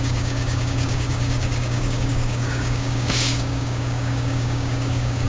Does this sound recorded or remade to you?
remade